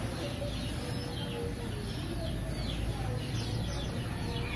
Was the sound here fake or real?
real